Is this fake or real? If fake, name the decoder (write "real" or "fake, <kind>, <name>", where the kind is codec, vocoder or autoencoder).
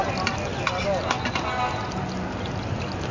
real